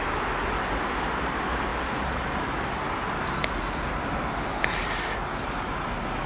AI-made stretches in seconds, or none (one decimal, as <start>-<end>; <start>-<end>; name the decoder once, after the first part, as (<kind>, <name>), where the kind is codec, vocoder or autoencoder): none